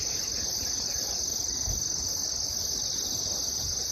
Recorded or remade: recorded